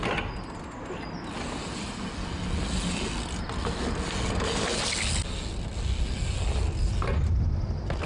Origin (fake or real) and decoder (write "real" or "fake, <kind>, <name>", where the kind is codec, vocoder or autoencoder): real